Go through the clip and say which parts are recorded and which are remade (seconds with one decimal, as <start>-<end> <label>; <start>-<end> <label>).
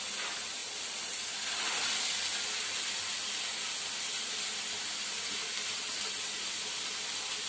0.0-7.5 recorded